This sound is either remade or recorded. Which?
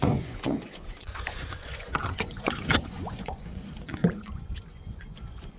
remade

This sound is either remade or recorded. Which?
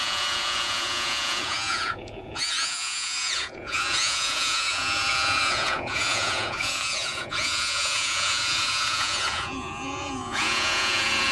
remade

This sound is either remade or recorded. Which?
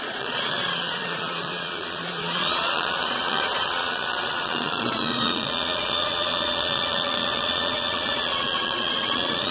remade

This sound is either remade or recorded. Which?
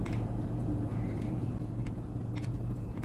remade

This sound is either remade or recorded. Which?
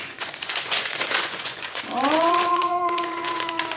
remade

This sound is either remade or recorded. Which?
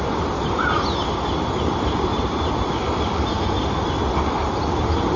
recorded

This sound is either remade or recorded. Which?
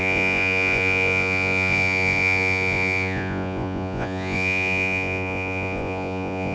remade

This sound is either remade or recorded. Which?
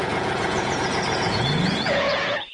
remade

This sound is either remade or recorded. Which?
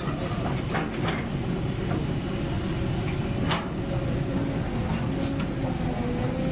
recorded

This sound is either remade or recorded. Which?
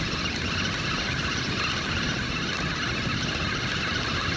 recorded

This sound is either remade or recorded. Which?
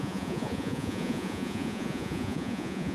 remade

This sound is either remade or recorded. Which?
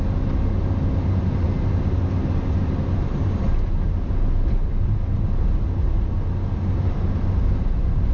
recorded